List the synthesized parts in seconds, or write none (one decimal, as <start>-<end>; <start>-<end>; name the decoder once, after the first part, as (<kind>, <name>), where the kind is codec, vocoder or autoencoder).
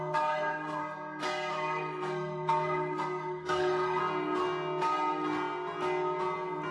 0.0-0.8 (codec, SNAC); 1.5-4.0